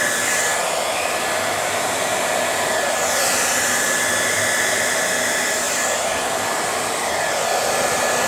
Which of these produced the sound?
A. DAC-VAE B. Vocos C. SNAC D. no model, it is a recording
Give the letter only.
D